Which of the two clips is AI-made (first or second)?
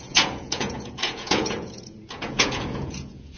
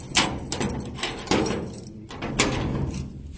first